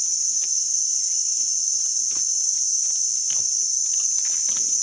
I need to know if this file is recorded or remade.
recorded